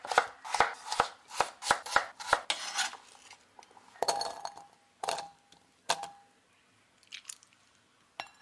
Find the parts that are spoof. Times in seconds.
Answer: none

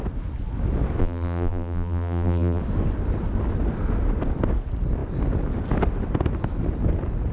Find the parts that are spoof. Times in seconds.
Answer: 1.0-2.6 (vocoder, BigVGAN v2)